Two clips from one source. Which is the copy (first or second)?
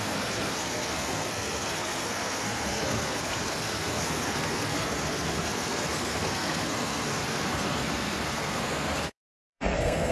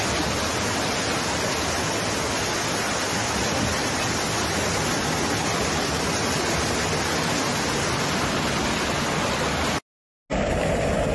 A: first